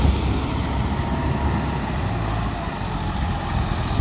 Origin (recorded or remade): recorded